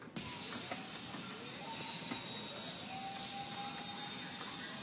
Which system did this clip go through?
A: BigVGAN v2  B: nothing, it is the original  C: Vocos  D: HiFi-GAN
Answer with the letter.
B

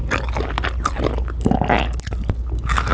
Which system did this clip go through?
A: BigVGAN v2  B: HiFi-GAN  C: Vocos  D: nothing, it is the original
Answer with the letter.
D